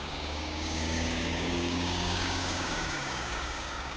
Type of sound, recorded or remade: remade